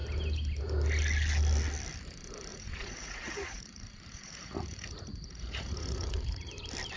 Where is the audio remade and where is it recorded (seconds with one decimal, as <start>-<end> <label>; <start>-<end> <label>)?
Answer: 0.0-2.5 recorded; 2.5-6.5 remade; 6.5-7.0 recorded